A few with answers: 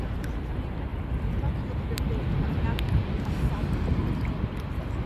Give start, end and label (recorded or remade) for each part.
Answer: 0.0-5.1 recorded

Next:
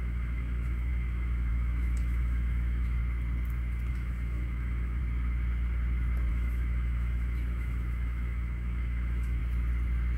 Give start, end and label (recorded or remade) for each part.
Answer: 0.0-3.0 remade; 3.0-3.9 recorded; 3.9-5.0 remade; 5.0-6.3 recorded; 6.3-9.4 remade; 9.4-10.2 recorded